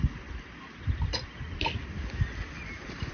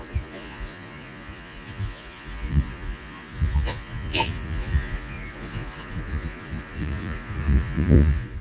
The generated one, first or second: second